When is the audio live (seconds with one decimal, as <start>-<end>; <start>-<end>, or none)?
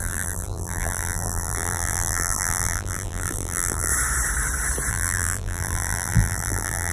3.9-4.9